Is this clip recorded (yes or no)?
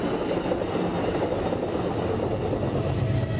yes